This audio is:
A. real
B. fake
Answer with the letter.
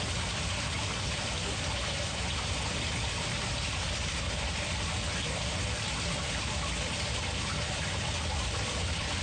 A